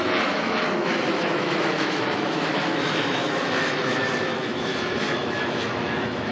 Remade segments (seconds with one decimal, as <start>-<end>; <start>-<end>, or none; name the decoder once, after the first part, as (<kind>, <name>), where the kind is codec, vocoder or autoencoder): 0.0-6.3 (autoencoder, DAC-VAE)